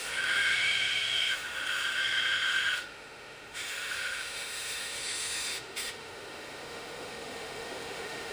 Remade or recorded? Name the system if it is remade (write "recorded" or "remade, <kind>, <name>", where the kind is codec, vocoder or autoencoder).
remade, autoencoder, DAC-VAE